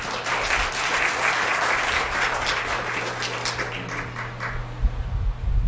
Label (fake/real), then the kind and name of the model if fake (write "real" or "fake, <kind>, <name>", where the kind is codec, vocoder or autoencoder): real